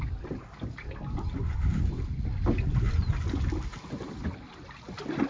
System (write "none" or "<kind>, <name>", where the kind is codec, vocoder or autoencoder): none